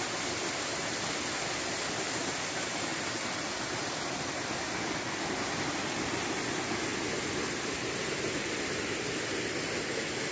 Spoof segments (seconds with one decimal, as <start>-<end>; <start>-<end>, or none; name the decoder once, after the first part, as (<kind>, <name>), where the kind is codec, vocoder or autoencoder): 2.9-5.6 (vocoder, BigVGAN v2); 6.9-8.5